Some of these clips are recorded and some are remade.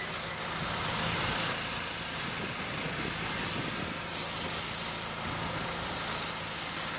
recorded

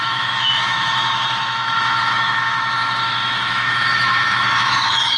remade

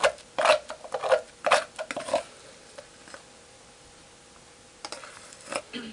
recorded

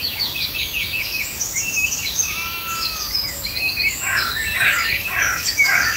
remade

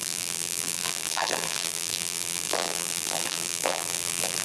remade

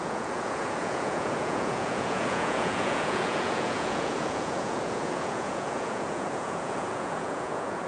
remade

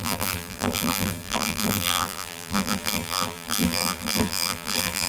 remade